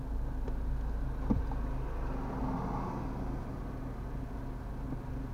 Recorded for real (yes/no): yes